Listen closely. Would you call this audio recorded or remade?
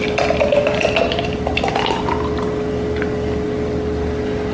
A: recorded